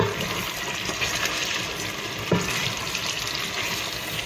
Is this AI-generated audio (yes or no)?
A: no